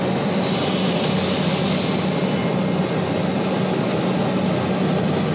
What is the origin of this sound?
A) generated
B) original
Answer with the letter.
B